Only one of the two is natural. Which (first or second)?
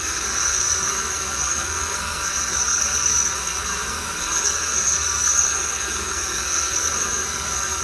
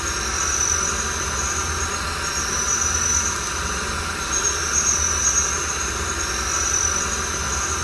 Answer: second